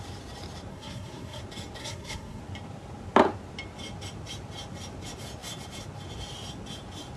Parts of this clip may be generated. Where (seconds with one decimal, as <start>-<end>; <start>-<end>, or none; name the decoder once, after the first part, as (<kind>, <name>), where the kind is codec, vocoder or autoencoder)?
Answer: 0.7-1.4 (codec, SNAC); 1.8-2.4